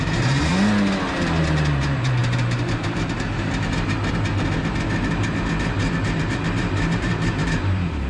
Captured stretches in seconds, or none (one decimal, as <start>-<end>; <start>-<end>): 0.5-1.1

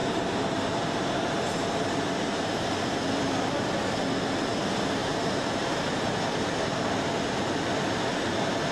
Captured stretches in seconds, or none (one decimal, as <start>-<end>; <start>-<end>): 2.7-5.0; 6.4-8.7

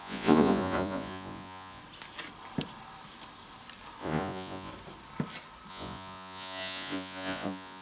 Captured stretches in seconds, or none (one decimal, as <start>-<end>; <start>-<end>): 1.8-4.0; 4.7-5.7

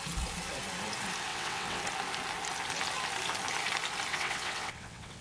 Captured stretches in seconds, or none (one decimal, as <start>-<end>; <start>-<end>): 0.0-1.3; 1.8-4.1

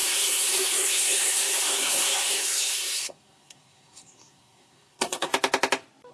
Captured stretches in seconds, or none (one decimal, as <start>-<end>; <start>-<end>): 5.3-6.1

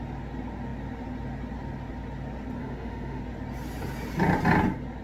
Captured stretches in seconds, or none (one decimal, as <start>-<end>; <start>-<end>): 0.0-2.6; 3.2-5.0